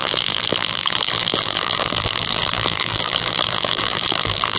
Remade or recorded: remade